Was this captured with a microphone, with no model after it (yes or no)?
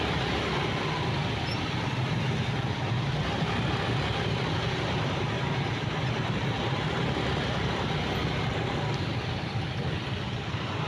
yes